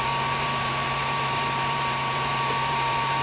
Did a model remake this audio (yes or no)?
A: yes